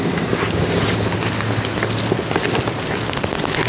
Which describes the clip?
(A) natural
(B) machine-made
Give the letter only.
A